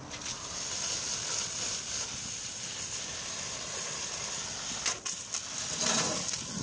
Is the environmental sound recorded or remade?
recorded